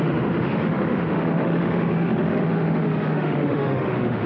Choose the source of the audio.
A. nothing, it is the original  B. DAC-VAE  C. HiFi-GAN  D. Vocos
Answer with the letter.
B